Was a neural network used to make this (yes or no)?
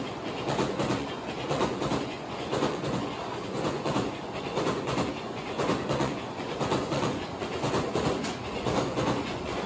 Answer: yes